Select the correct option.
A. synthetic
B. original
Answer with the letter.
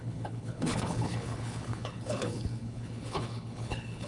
A